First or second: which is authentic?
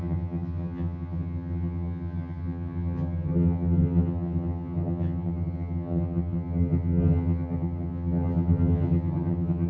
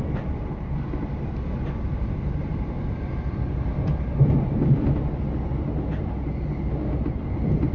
second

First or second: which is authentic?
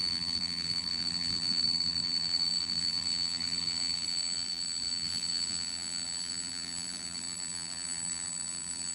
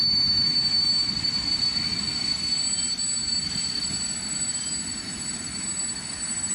second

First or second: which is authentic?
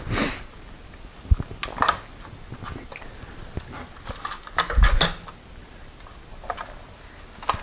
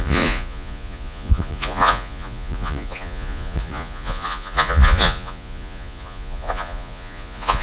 first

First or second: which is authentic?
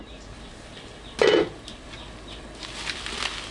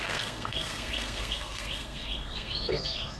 first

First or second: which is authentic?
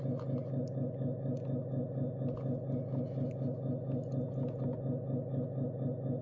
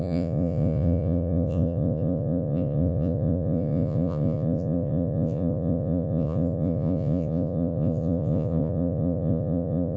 first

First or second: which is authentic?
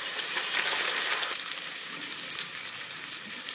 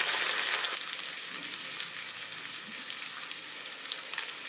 second